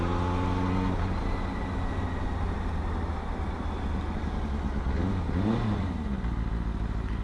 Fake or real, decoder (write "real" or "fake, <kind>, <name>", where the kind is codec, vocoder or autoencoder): real